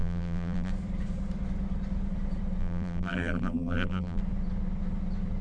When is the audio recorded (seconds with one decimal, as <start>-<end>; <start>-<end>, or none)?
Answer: 0.7-2.6; 4.2-5.4